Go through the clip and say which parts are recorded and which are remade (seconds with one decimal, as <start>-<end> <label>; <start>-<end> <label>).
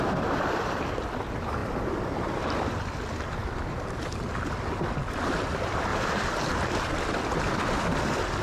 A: 0.0-8.4 recorded